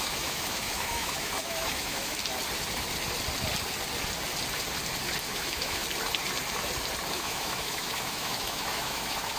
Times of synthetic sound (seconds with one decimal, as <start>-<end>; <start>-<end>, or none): 0.0-2.2; 5.2-5.8; 7.1-9.4